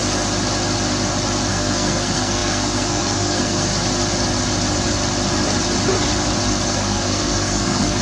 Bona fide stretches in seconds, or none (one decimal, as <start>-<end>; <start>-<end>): 0.0-1.5; 3.7-6.7